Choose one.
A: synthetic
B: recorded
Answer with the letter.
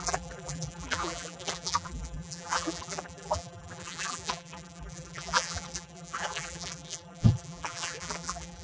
A